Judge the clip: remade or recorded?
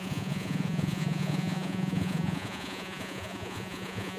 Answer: remade